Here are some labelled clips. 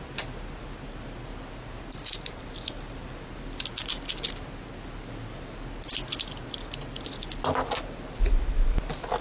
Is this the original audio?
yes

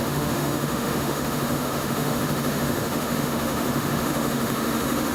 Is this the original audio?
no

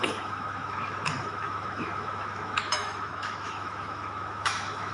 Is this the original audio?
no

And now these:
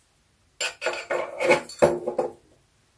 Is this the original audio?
yes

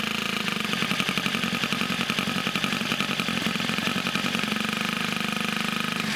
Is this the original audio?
yes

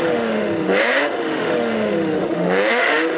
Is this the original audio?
no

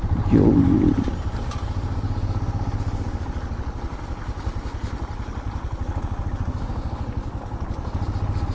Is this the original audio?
yes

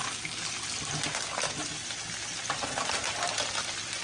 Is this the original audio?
yes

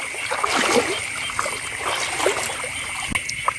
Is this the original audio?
yes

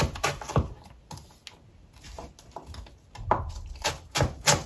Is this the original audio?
yes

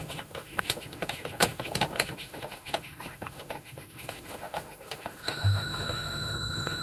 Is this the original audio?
no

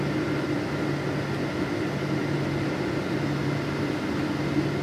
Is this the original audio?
yes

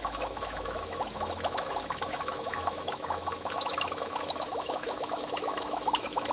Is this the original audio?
no